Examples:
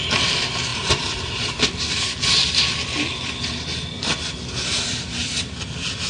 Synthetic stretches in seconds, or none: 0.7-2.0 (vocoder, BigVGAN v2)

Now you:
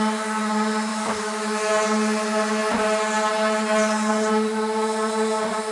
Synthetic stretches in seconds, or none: 0.9-1.7 (autoencoder, DAC-VAE)

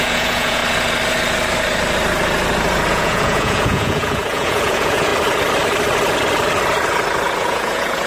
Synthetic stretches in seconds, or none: 0.0-0.6 (vocoder, Vocos); 2.9-5.1; 7.4-8.1

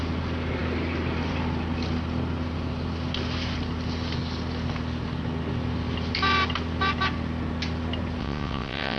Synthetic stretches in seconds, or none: 8.2-9.0 (vocoder, WaveNeXt)

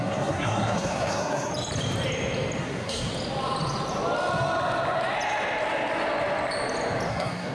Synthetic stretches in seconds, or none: 0.0-1.5 (codec, SNAC); 2.6-3.1; 7.1-7.5